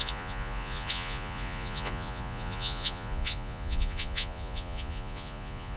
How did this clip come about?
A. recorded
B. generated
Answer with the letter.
B